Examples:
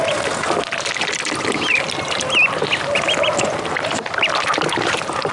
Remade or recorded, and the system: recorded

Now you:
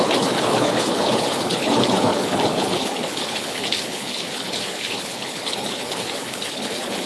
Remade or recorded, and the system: remade, codec, HILCodec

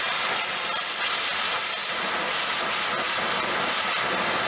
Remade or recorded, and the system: recorded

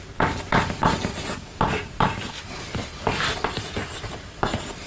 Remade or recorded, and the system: recorded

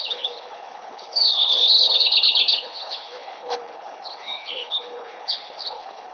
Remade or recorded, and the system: remade, codec, HILCodec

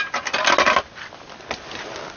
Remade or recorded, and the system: recorded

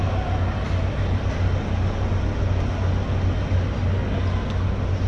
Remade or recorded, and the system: recorded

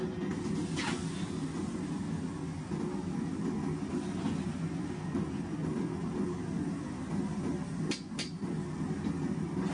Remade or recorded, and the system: recorded